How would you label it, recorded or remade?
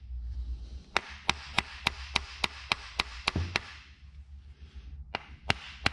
recorded